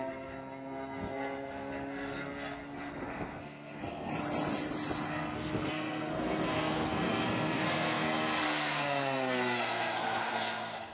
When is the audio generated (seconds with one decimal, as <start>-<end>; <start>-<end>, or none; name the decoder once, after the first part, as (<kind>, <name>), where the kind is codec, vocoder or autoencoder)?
0.0-4.1 (codec, SNAC); 5.1-10.9